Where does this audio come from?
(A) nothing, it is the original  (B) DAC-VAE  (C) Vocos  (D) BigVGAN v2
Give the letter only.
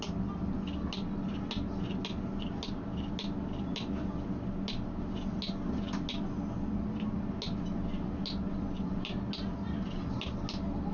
A